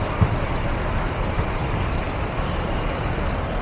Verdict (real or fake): real